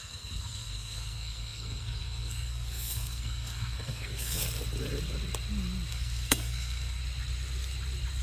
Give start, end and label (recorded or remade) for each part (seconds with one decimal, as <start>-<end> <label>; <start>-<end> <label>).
0.0-4.4 remade; 4.4-5.9 recorded; 5.9-7.0 remade; 7.0-8.2 recorded

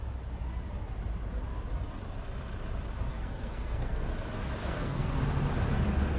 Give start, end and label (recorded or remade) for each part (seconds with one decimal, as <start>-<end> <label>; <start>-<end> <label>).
0.0-3.1 recorded; 3.1-4.1 remade; 4.1-4.6 recorded; 4.6-5.2 remade; 5.2-6.2 recorded

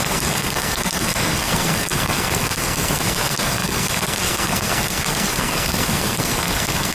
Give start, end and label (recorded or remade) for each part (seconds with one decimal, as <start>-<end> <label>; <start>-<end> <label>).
0.0-6.9 remade

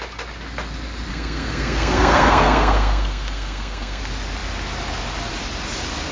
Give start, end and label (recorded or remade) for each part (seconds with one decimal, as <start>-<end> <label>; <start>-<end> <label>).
0.0-1.1 recorded; 1.1-4.0 remade; 4.0-6.1 recorded

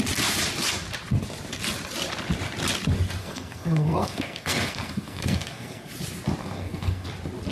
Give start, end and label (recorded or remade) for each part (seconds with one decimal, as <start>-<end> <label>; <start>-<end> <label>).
0.0-3.2 recorded; 3.2-5.9 remade; 5.9-6.4 recorded; 6.4-7.1 remade; 7.1-7.5 recorded

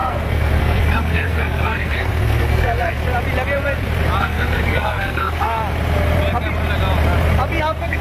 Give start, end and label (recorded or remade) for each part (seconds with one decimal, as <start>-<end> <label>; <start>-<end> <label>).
0.0-3.0 remade; 3.0-4.2 recorded; 4.2-5.6 remade; 5.6-7.6 recorded; 7.6-8.0 remade